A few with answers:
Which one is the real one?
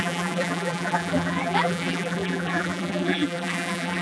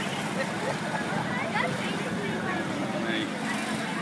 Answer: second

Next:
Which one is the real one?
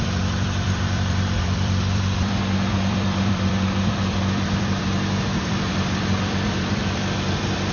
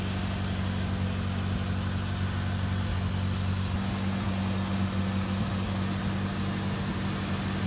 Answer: second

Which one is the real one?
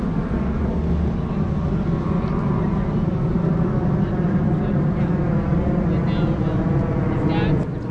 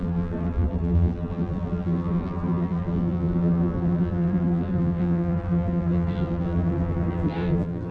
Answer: first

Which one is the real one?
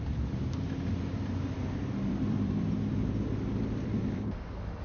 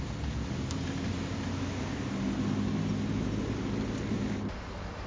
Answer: second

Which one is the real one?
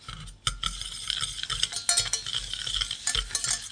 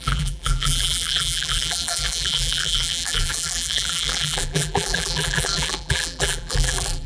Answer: first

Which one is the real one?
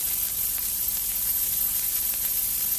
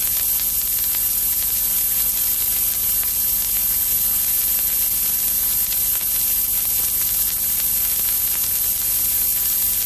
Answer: second